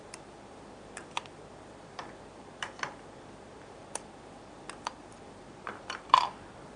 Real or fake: fake